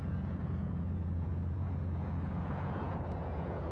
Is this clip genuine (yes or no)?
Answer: no